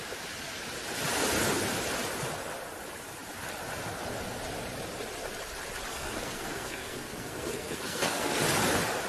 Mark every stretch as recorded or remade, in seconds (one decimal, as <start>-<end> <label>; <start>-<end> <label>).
0.0-5.9 recorded; 5.9-8.4 remade; 8.4-9.1 recorded